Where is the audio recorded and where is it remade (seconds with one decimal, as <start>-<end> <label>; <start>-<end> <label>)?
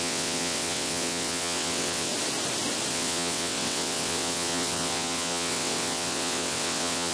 0.0-2.1 remade; 2.1-2.9 recorded; 2.9-7.1 remade